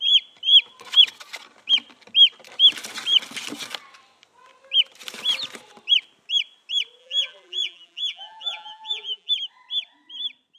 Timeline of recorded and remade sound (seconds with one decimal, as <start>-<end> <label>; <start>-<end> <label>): 0.0-7.0 recorded; 7.0-9.3 remade; 9.3-10.6 recorded